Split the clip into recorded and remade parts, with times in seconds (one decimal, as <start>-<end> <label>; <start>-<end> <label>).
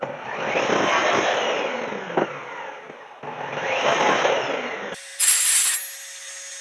0.0-6.6 recorded